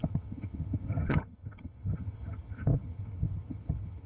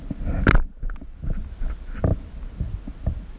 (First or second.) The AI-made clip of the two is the first